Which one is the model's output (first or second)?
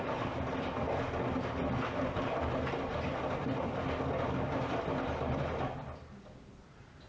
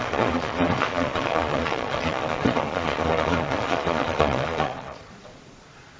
second